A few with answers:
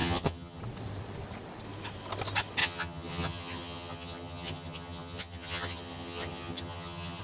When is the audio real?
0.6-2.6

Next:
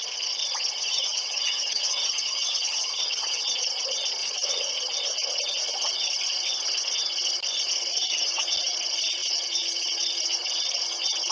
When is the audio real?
0.0-0.8; 3.4-4.2; 4.7-7.9; 8.4-11.3

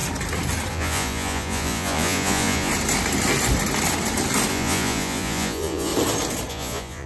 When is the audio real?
0.0-0.7; 2.7-4.5; 5.9-6.5

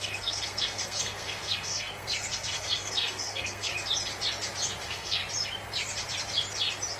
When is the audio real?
3.7-4.8; 5.2-7.0

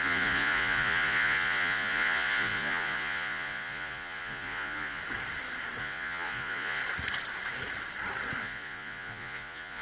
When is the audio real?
5.0-5.8; 6.8-8.4

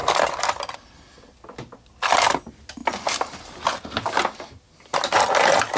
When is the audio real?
0.0-5.8